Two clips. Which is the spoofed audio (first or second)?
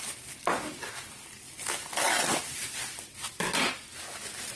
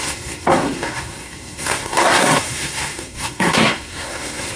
second